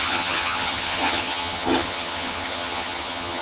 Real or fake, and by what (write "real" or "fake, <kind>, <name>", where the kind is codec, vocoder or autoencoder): fake, vocoder, HiFi-GAN